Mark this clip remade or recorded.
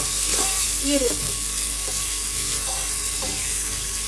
remade